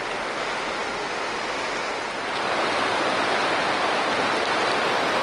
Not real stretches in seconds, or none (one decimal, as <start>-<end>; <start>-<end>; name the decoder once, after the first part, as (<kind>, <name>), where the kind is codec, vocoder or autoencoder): none